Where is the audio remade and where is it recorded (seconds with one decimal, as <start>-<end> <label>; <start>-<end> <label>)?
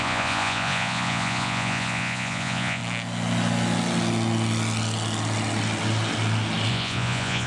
0.0-2.8 remade; 2.8-6.7 recorded; 6.7-7.5 remade